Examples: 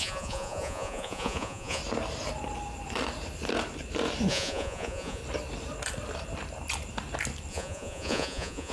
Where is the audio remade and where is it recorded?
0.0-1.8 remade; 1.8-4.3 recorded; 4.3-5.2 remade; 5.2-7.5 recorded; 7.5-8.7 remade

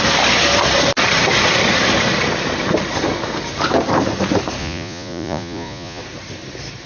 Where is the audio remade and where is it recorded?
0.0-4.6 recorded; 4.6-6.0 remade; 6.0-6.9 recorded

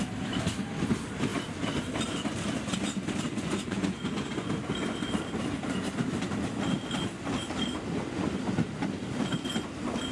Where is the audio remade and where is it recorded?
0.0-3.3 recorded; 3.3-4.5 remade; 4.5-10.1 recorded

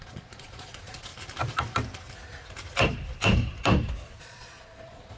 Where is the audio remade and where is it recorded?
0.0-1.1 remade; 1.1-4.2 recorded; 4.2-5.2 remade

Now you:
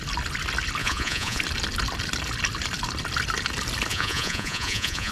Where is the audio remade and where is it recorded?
0.0-0.8 recorded; 0.8-1.4 remade; 1.4-3.9 recorded; 3.9-5.1 remade

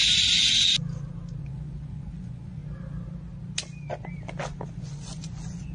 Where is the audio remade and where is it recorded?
0.0-1.4 recorded; 1.4-2.6 remade; 2.6-4.8 recorded; 4.8-5.7 remade